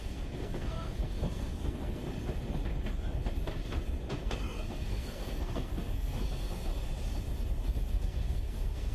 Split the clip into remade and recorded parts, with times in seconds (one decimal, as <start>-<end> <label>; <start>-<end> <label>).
0.0-2.0 remade; 2.0-4.1 recorded; 4.1-6.7 remade; 6.7-7.8 recorded; 7.8-8.9 remade

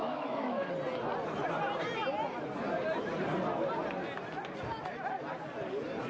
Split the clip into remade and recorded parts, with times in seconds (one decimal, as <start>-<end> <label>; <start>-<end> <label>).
0.0-0.7 remade; 0.7-6.1 recorded

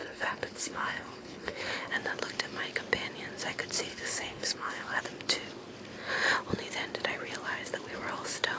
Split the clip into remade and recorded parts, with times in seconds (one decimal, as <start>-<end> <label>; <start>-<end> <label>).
0.0-1.9 remade; 1.9-3.9 recorded; 3.9-5.0 remade; 5.0-8.6 recorded

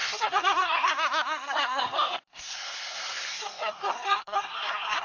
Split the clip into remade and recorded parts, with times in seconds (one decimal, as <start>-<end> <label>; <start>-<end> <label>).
0.0-5.0 remade

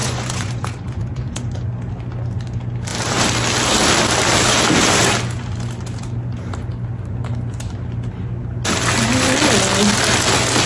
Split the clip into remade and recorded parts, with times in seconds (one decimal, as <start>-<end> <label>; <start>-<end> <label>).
0.0-1.4 remade; 1.4-10.7 recorded

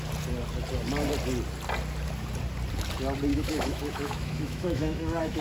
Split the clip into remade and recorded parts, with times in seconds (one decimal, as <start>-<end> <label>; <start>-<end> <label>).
0.0-3.3 recorded; 3.3-5.4 remade

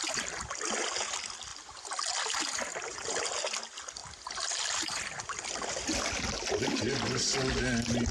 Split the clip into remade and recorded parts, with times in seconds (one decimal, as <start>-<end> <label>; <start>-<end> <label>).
0.0-8.1 recorded